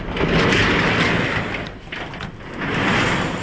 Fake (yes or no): no